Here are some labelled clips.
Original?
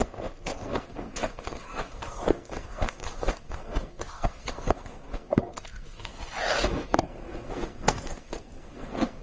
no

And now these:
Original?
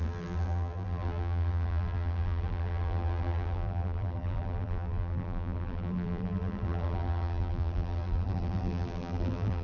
no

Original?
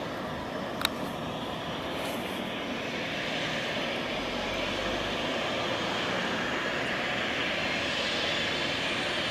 yes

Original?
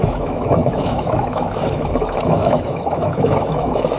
no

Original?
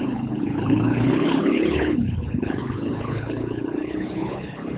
no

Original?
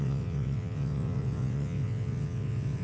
no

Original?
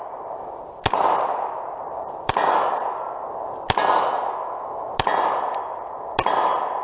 yes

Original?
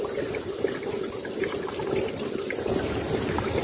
no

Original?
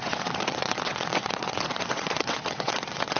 no